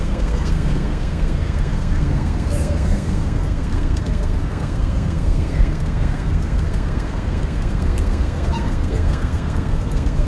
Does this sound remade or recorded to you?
remade